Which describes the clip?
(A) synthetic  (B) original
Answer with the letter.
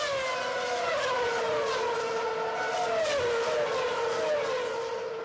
B